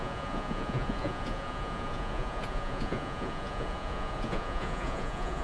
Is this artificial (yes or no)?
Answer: yes